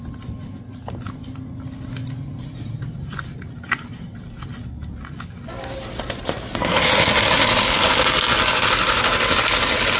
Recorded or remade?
recorded